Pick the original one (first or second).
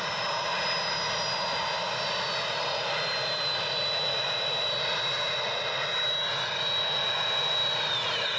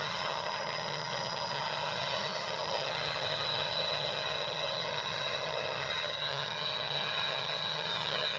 first